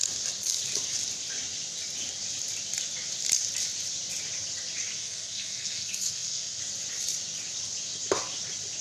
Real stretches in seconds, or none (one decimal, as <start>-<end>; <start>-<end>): 0.0-4.9; 6.6-8.8